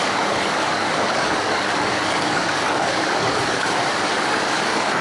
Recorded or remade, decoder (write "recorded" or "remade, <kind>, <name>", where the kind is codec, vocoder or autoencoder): remade, codec, DAC